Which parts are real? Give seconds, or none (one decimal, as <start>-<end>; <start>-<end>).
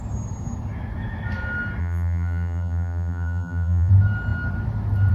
0.0-1.8; 3.9-5.1